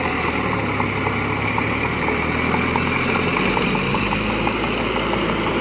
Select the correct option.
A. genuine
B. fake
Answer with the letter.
A